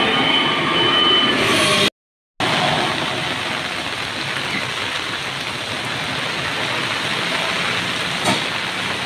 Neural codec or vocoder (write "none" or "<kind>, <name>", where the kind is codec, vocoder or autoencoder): none